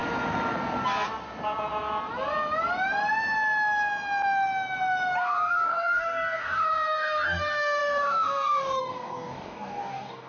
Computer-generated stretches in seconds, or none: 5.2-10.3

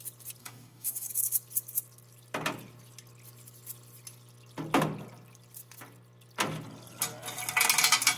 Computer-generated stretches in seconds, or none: 0.4-1.1

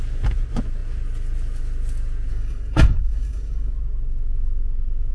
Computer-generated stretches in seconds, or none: 2.3-3.7

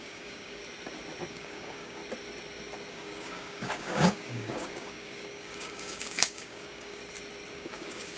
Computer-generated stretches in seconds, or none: 0.0-0.6; 1.3-2.0; 2.9-7.0; 7.5-8.2

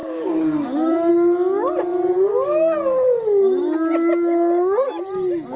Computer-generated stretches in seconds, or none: 0.0-1.1